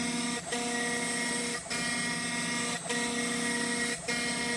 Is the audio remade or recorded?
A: recorded